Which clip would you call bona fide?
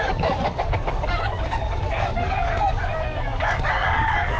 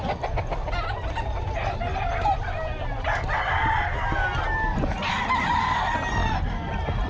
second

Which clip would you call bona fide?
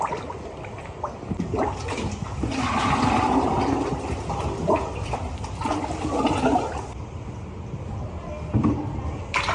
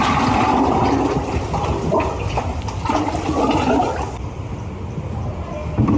first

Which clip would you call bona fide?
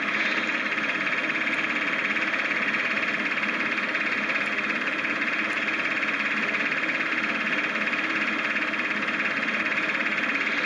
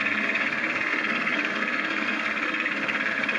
first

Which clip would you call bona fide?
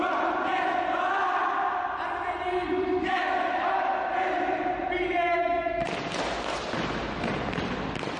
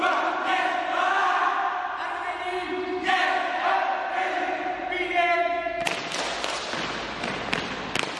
second